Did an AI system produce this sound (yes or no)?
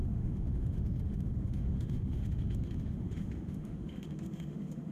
yes